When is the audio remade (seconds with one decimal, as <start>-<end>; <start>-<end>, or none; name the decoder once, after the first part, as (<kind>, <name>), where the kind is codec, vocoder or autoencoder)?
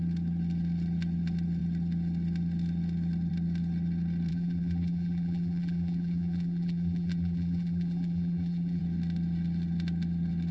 4.3-8.8 (vocoder, BigVGAN v2)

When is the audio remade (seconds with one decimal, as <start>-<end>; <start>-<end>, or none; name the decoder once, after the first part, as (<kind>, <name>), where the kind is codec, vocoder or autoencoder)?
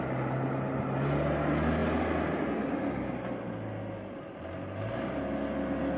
none